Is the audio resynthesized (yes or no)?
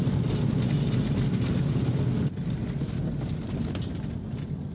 no